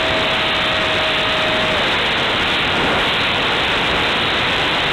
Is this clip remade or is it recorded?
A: recorded